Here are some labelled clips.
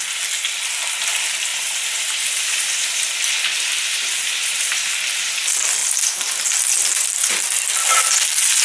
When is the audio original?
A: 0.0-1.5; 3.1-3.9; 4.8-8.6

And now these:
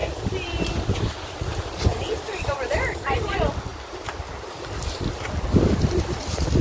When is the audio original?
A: 0.0-1.4

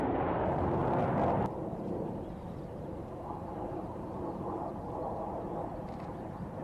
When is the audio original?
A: 0.8-1.8